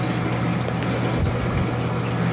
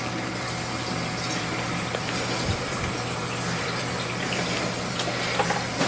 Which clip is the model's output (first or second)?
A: second